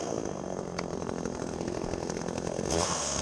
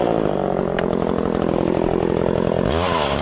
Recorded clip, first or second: second